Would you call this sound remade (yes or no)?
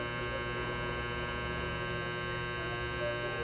no